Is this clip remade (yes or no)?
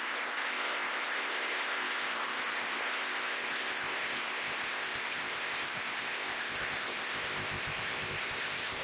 yes